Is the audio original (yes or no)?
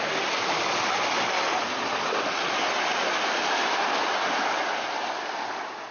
yes